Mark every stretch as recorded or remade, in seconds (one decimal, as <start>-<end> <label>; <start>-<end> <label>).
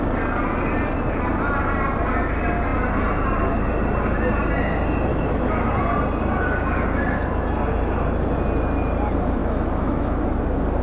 0.0-5.1 recorded; 5.1-5.7 remade; 5.7-9.4 recorded; 9.4-10.2 remade; 10.2-10.8 recorded